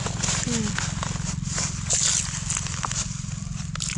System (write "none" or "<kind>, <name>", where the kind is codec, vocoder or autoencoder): none